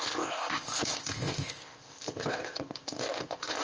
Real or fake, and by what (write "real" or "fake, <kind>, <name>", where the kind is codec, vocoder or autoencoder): fake, codec, ZipCodec